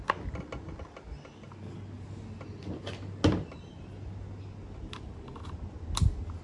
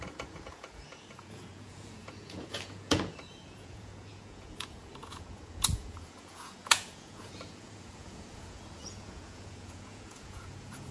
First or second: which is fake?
second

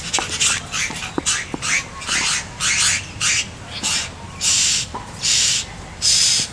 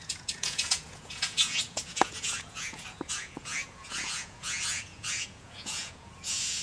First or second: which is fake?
second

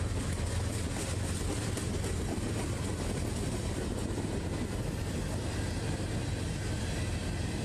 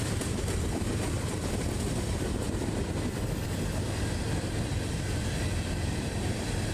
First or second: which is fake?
second